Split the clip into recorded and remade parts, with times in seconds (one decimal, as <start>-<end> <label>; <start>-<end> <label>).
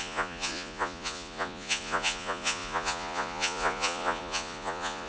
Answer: 0.0-5.1 remade